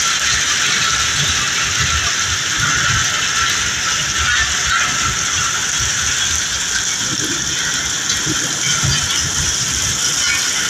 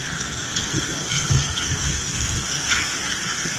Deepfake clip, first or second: second